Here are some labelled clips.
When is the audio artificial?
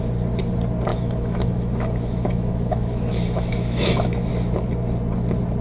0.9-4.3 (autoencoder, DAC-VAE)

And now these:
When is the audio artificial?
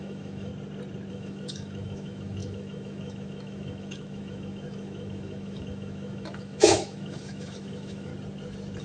0.0-0.5 (autoencoder, DAC-VAE); 1.1-8.1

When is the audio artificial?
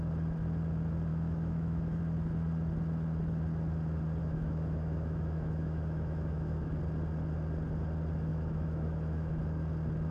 1.1-2.0 (autoencoder, DAC-VAE); 4.2-6.8; 8.3-9.4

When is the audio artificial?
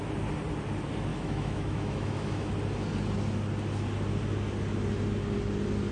1.1-2.5 (autoencoder, DAC-VAE)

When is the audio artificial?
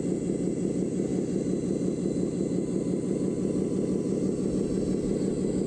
none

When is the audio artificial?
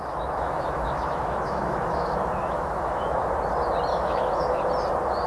0.0-3.2 (autoencoder, DAC-VAE); 3.9-4.6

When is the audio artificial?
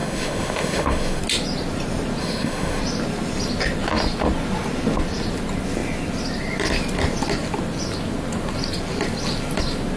0.0-1.2 (autoencoder, DAC-VAE); 2.2-2.8